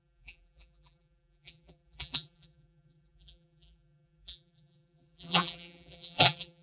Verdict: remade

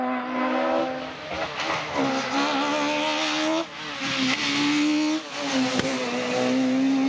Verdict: recorded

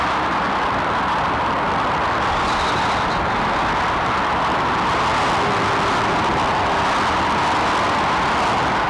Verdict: recorded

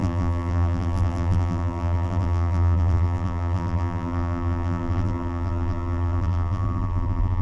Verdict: remade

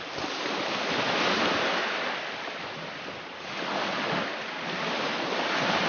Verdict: remade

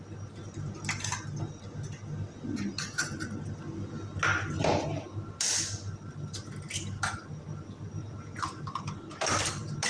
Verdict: recorded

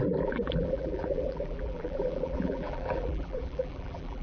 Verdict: remade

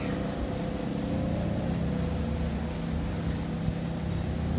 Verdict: recorded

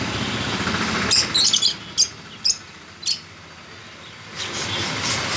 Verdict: recorded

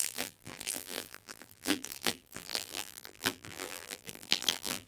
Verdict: remade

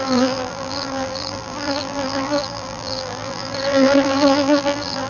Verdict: remade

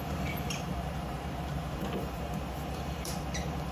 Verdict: remade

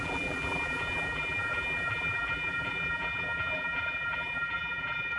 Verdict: remade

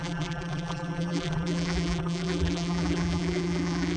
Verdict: remade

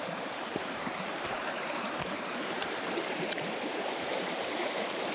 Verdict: remade